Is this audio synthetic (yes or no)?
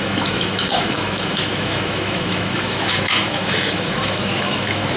yes